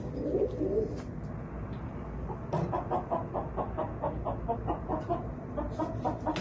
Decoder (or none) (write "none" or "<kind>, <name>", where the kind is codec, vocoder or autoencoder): none